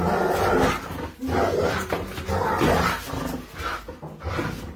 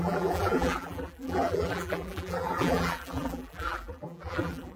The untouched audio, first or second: first